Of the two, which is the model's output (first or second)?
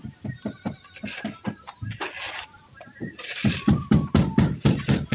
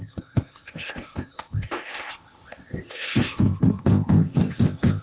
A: second